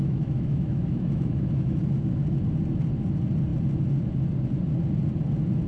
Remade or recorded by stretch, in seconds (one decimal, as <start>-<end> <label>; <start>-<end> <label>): 0.0-1.8 remade; 1.8-5.7 recorded